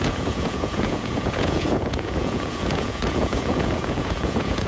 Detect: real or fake fake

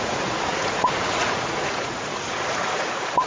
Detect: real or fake fake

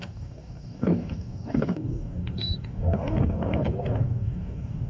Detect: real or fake fake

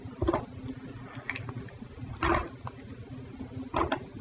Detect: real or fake real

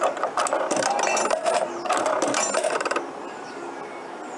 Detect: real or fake real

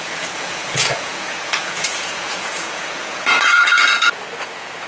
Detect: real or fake fake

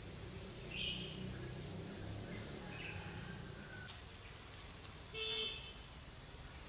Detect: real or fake real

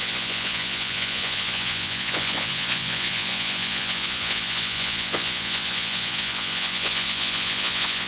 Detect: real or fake fake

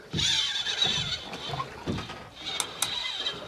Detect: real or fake real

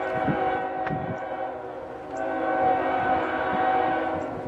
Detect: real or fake real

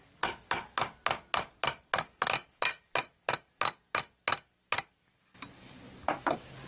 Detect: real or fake real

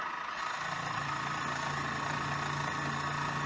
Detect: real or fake real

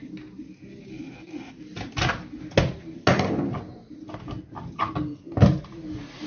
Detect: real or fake real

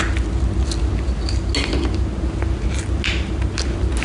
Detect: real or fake real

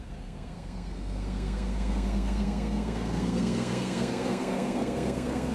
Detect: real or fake fake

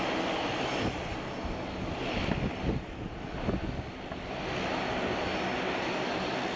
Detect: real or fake real